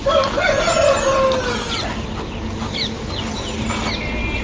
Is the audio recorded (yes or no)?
yes